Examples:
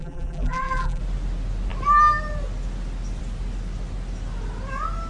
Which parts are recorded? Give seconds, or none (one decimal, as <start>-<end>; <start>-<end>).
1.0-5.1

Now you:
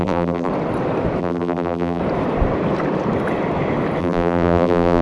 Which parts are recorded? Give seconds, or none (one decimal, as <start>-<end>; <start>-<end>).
0.5-1.2; 2.0-4.0

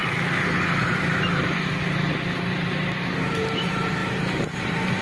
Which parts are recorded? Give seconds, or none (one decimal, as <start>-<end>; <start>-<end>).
0.0-3.0